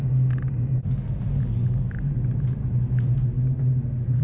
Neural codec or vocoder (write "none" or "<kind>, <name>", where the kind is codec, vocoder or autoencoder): none